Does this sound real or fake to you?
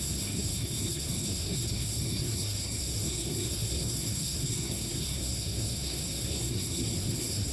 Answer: fake